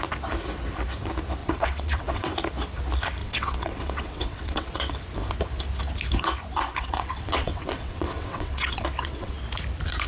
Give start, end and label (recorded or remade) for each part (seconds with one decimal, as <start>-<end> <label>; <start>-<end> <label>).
0.0-1.4 recorded; 1.4-2.3 remade; 2.3-3.2 recorded; 3.2-4.9 remade; 4.9-6.7 recorded; 6.7-9.4 remade; 9.4-10.1 recorded